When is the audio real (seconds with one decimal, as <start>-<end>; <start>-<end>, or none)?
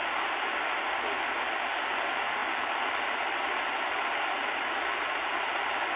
0.0-6.0